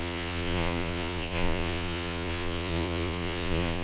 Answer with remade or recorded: remade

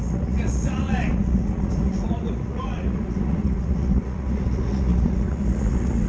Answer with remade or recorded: remade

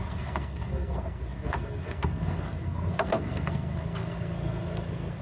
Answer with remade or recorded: remade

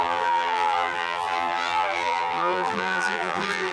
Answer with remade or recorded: remade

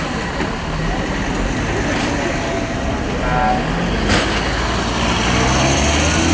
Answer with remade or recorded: recorded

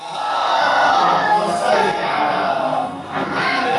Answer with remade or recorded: remade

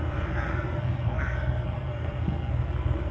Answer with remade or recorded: remade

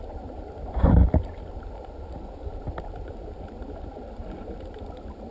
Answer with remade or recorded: recorded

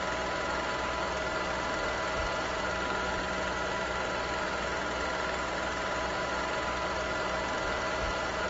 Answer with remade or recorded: recorded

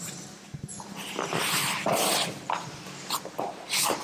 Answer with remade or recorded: recorded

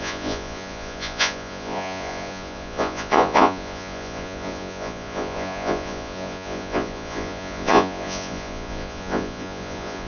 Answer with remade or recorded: remade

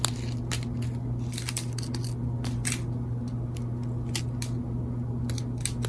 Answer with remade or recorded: recorded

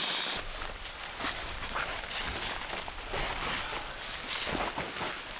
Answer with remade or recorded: recorded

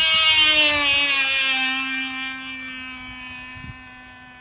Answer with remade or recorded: recorded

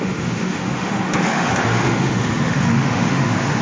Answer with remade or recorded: remade